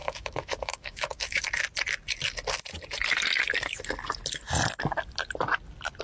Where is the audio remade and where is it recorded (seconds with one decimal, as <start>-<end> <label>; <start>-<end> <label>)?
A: 0.0-1.4 remade; 1.4-6.0 recorded